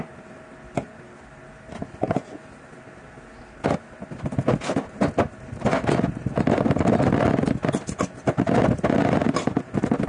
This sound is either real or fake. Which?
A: real